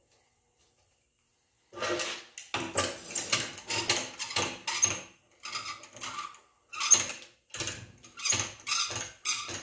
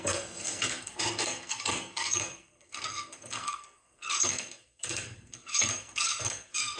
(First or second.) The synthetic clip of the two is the second